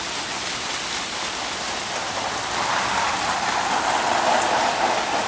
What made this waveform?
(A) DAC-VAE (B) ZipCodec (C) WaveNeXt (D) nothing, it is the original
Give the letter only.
D